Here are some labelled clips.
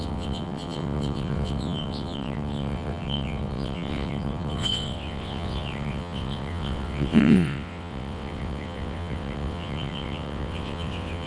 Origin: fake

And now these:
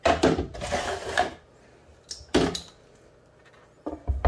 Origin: real